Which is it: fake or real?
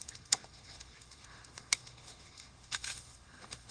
fake